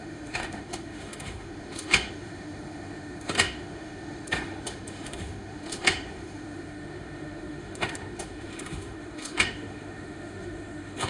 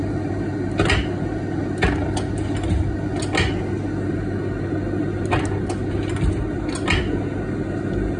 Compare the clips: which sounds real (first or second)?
second